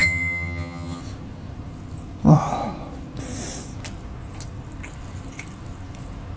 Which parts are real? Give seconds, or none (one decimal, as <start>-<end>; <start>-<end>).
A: 1.0-6.4